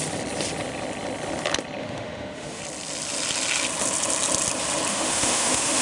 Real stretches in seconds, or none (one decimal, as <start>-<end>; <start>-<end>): 0.0-1.8; 2.6-4.9